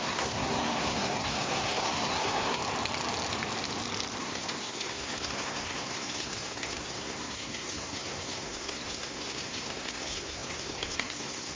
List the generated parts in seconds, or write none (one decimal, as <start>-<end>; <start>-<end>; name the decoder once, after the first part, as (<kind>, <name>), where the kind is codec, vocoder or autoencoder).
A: 0.0-2.6 (codec, SNAC); 4.2-11.6